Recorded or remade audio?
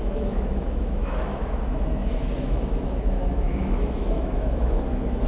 remade